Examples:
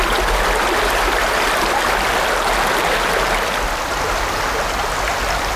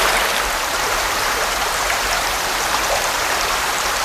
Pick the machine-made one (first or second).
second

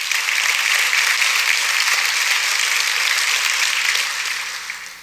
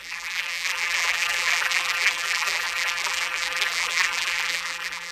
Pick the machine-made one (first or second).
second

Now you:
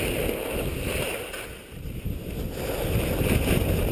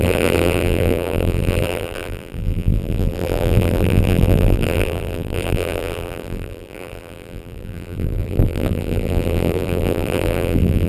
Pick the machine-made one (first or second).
second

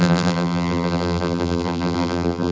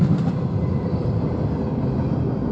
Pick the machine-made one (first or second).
first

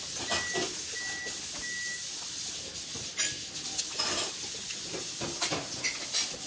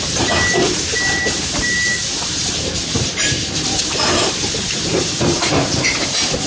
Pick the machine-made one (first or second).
second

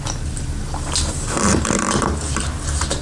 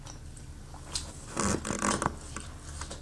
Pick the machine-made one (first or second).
first